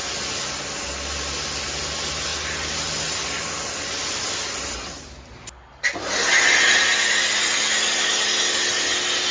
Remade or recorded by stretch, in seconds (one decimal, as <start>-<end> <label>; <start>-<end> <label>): 0.0-9.3 recorded

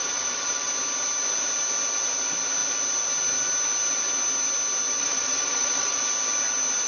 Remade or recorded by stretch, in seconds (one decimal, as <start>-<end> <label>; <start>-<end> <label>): 0.0-0.7 remade; 0.7-5.0 recorded; 5.0-6.0 remade; 6.0-6.9 recorded

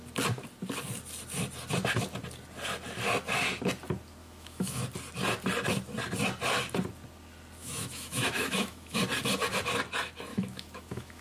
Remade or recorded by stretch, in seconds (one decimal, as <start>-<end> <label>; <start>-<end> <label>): 0.0-4.2 recorded; 4.2-4.8 remade; 4.8-7.6 recorded; 7.6-9.0 remade; 9.0-10.3 recorded; 10.3-11.2 remade

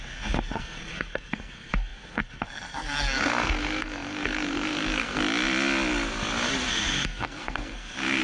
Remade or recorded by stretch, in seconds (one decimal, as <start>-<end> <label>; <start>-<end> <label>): 0.0-5.2 remade; 5.2-6.7 recorded; 6.7-8.2 remade

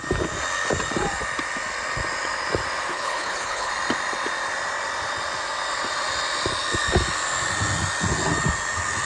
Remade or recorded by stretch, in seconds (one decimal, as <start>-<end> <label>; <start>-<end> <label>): 0.0-2.9 recorded; 2.9-3.7 remade; 3.7-9.1 recorded